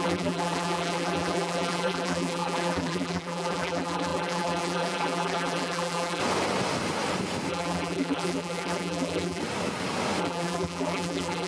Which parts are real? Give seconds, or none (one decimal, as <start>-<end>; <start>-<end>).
6.2-7.5; 9.4-10.2